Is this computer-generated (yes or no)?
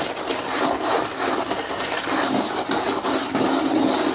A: no